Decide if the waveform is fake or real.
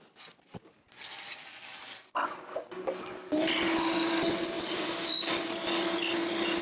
real